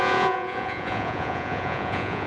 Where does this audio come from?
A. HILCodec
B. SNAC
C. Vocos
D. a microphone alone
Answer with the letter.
C